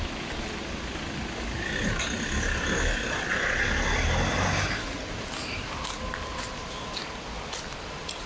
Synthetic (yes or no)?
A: no